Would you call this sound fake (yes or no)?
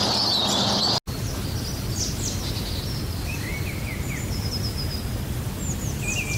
no